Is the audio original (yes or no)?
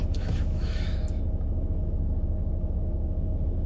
no